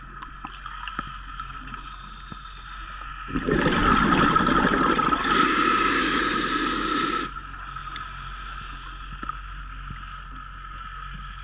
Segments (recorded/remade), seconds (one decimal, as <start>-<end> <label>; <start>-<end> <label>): 0.0-11.4 recorded